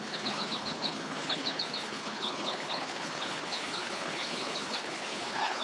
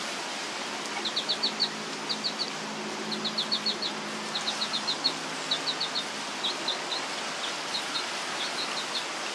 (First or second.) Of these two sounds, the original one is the second